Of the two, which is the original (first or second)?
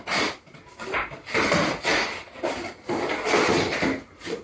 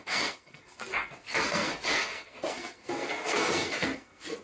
first